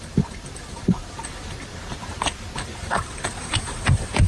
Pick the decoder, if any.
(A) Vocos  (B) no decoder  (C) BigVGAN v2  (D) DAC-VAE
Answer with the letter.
C